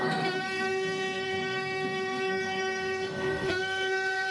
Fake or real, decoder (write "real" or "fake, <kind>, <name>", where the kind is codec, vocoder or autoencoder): fake, codec, SNAC